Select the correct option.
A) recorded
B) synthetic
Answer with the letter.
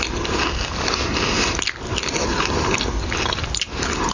A